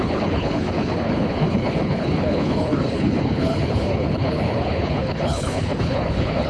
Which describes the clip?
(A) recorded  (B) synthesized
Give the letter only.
B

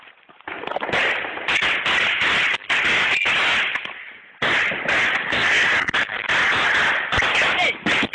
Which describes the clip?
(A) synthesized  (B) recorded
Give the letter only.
B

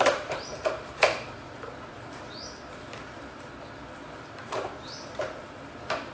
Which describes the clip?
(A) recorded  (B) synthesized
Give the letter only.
B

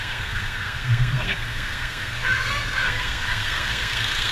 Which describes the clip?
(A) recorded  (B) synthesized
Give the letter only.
B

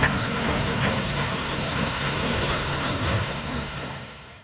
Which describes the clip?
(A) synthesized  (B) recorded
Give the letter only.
A